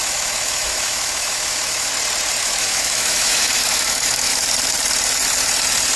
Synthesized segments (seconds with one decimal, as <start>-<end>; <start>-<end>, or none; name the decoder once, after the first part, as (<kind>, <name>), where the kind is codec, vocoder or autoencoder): 0.0-1.9 (autoencoder, DAC-VAE); 2.4-4.3